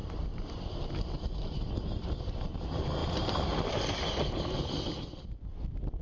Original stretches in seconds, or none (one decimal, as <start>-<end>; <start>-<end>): 1.7-6.0